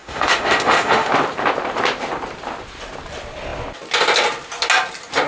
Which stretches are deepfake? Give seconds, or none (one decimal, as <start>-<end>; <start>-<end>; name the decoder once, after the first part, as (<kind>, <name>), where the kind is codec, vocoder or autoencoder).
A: 0.0-1.1 (autoencoder, DAC-VAE)